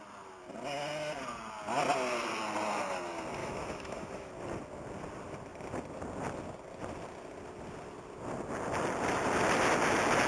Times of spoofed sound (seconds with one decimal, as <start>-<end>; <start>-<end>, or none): 3.4-4.3